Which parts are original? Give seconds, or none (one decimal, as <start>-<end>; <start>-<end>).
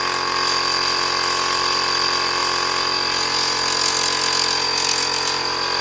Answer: 0.0-5.8